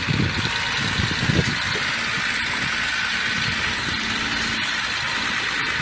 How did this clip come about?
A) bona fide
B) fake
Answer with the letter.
A